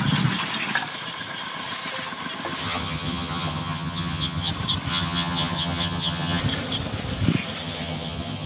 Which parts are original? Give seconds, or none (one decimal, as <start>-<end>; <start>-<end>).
0.0-2.6; 4.5-4.9; 6.4-7.6